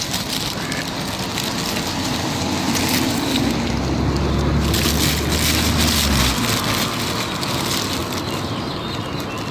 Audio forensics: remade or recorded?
recorded